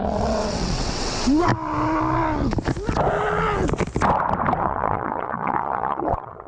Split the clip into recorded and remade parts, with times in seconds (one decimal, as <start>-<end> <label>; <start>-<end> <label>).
0.0-1.5 remade; 1.5-4.6 recorded; 4.6-6.5 remade